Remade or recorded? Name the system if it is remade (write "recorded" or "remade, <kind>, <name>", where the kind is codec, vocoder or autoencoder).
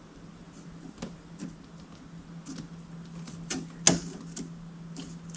recorded